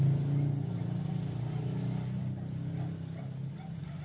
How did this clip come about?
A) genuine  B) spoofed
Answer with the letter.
A